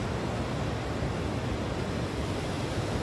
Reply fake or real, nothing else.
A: real